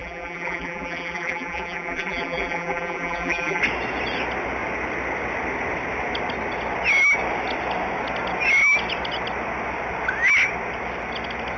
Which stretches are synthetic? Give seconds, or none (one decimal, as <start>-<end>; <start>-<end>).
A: 0.0-3.6